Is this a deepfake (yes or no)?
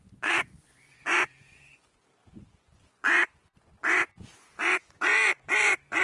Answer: yes